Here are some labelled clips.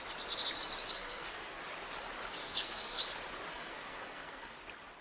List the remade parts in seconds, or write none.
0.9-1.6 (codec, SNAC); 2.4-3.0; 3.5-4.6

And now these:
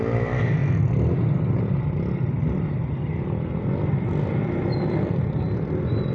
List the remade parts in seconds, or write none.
0.0-0.6 (vocoder, BigVGAN v2); 1.6-6.1